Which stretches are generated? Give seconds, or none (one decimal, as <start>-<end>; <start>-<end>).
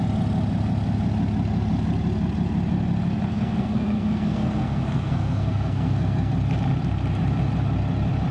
3.3-6.3